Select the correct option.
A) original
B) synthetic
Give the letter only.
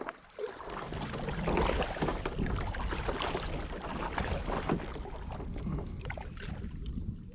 A